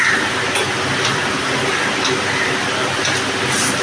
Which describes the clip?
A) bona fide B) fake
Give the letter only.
A